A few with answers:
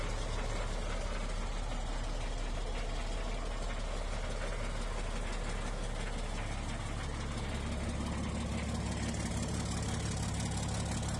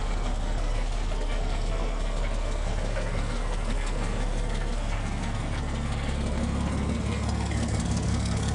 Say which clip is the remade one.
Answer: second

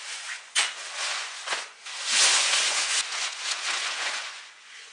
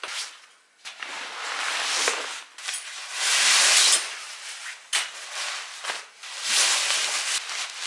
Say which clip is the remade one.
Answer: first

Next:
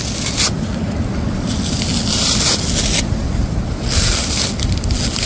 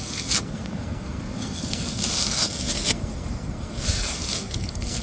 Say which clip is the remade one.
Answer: second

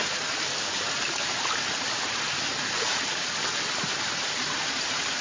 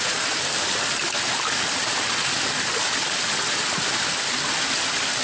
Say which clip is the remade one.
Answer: first